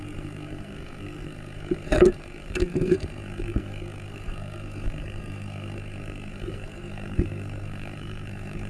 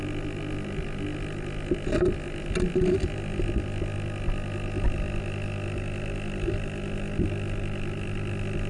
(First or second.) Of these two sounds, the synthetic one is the first